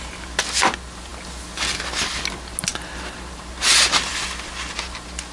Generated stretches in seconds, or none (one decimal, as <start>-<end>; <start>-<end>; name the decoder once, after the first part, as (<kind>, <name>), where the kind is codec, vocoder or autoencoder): none